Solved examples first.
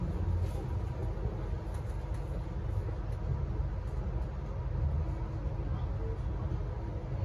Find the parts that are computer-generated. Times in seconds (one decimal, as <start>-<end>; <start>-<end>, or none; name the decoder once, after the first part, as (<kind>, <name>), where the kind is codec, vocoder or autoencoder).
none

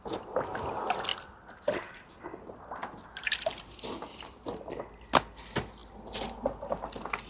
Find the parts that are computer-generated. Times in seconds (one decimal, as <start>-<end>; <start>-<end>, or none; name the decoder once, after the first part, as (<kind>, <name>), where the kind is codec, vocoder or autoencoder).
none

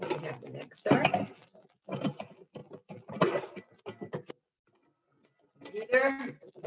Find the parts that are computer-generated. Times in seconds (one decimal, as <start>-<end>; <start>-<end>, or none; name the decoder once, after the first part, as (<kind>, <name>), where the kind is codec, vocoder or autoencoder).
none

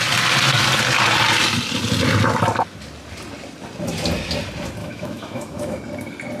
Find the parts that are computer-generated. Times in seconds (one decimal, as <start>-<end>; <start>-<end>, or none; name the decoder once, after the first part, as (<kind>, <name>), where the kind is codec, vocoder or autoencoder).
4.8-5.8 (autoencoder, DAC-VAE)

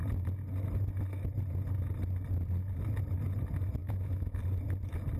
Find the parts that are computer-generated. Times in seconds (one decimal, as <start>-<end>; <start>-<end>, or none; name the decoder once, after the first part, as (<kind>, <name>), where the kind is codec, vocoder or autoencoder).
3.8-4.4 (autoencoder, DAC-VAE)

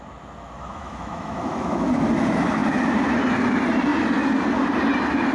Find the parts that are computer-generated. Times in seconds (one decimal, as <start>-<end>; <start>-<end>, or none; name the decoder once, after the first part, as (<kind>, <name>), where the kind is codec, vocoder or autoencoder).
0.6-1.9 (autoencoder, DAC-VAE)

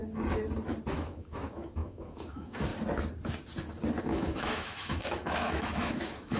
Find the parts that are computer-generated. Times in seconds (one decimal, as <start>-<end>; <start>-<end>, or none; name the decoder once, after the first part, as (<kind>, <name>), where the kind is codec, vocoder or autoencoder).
0.9-2.7 (autoencoder, DAC-VAE); 4.0-6.4